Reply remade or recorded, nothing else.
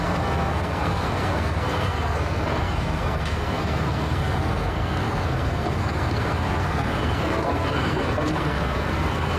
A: remade